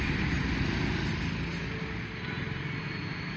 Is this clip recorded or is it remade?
recorded